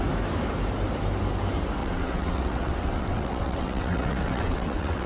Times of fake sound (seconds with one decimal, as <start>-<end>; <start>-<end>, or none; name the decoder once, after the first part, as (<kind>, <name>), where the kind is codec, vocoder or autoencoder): 1.8-5.1 (vocoder, WaveNeXt)